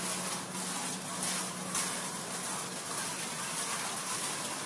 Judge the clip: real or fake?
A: real